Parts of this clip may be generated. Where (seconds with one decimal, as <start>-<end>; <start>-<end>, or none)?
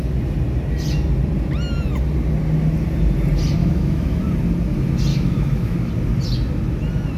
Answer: 3.6-4.2; 5.1-5.9